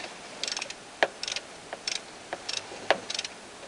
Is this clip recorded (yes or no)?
yes